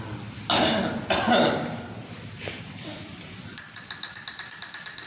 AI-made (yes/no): no